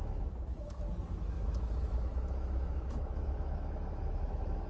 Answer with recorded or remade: remade